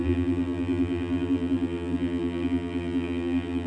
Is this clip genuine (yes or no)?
no